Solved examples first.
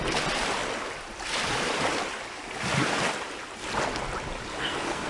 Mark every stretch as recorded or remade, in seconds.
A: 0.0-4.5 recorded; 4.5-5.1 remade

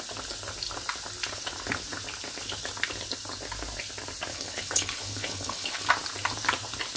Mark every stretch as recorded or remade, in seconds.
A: 0.0-4.3 recorded; 4.3-5.9 remade; 5.9-7.0 recorded